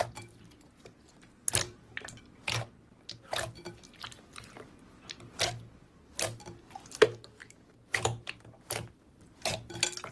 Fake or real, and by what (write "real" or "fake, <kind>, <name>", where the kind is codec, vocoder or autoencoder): real